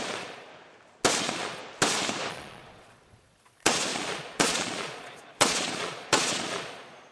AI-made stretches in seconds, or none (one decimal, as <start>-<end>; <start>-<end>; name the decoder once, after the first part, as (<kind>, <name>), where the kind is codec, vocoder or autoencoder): 0.0-0.5 (vocoder, Vocos); 1.2-1.6; 2.3-7.1